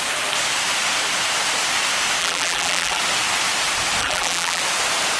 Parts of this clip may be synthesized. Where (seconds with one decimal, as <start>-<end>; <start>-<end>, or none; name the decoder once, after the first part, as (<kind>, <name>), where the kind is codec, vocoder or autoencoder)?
2.2-3.0 (vocoder, BigVGAN v2); 4.0-4.6